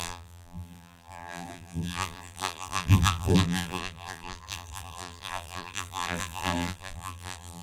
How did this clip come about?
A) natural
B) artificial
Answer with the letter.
B